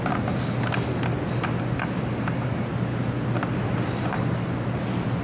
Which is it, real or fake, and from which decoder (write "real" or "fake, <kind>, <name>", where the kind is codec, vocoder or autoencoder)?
real